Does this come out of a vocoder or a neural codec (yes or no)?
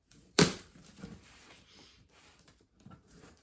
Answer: yes